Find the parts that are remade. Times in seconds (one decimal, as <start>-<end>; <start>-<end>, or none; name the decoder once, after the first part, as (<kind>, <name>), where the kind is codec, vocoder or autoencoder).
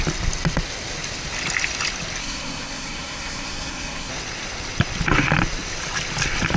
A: 2.2-4.1 (codec, SNAC)